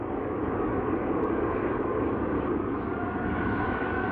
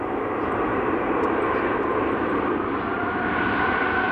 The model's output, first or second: first